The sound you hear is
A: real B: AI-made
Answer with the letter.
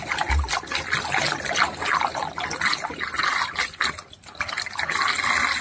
A